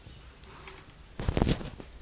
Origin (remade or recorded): recorded